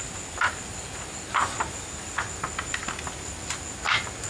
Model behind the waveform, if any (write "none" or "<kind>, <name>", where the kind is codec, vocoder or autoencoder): none